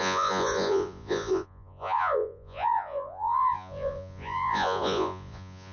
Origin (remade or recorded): remade